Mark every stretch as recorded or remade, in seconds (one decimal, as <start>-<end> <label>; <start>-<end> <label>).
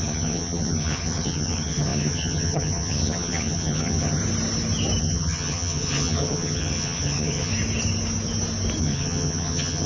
0.0-4.2 remade; 4.2-5.0 recorded; 5.0-7.5 remade; 7.5-8.8 recorded; 8.8-9.9 remade